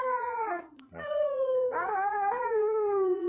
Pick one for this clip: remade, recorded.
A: remade